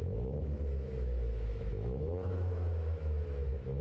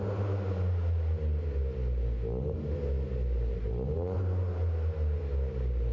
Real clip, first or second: second